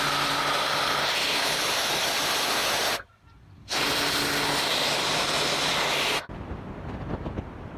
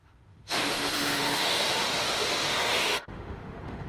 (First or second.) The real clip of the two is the first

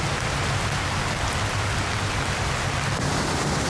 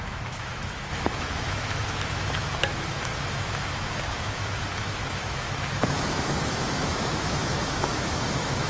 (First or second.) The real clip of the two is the first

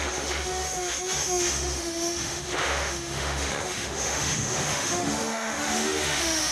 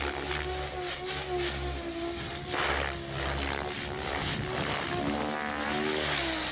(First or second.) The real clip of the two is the second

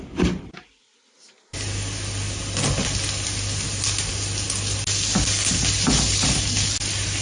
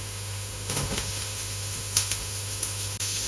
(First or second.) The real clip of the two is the first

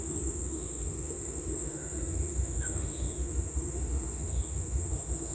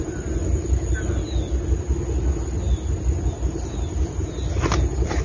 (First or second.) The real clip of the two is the second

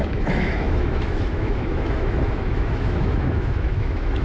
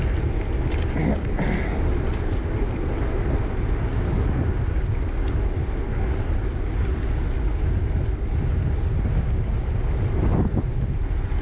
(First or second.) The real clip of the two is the second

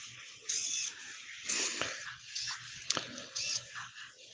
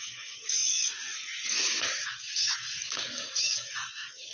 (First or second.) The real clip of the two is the first